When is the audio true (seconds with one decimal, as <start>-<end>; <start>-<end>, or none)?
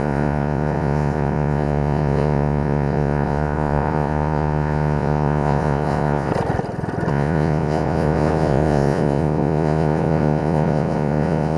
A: 6.3-7.1